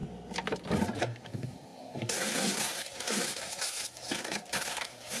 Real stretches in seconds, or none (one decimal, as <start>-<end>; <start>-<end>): 0.0-1.0